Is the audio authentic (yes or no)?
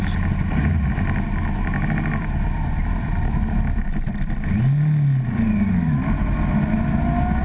yes